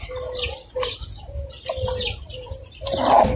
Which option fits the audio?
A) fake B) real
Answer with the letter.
B